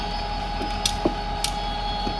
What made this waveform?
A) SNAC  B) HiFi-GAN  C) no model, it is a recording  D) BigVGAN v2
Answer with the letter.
C